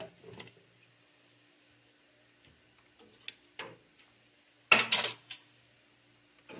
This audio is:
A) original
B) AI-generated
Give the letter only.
A